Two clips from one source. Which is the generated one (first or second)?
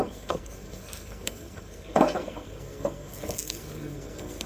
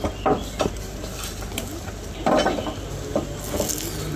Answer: first